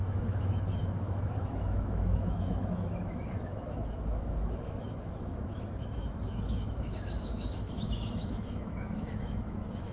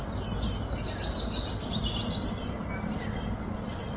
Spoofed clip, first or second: first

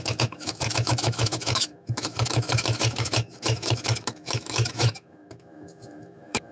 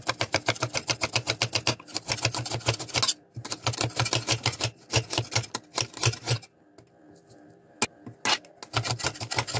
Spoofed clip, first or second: first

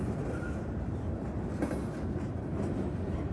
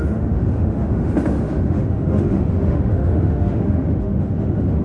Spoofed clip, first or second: second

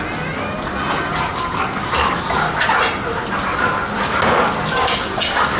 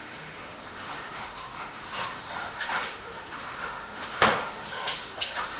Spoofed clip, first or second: second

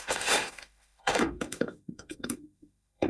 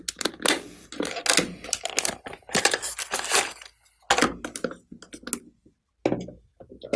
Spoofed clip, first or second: first